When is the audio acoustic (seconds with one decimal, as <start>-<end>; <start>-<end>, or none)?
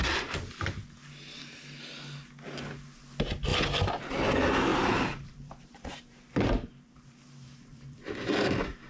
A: 0.0-3.5; 4.0-4.7